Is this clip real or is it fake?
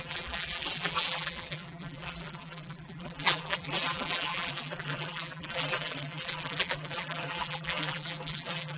fake